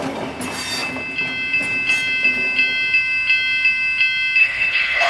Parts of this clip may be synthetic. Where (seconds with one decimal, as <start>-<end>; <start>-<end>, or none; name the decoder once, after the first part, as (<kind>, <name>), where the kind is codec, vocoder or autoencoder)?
4.4-5.1 (codec, HILCodec)